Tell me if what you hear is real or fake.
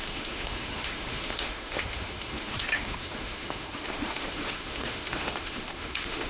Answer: fake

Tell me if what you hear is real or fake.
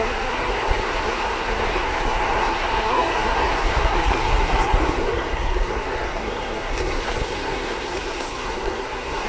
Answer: fake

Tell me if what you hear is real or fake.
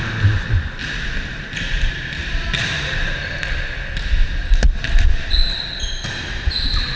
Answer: real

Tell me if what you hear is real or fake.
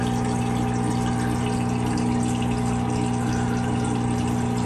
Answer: real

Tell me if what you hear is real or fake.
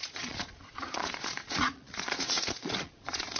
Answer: fake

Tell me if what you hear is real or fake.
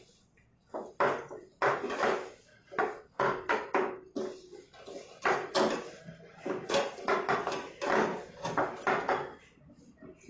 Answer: real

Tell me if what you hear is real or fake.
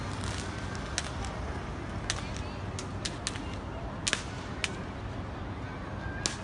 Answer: real